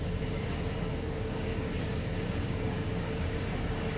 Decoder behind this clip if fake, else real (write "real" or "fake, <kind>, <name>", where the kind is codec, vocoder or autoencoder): fake, codec, DAC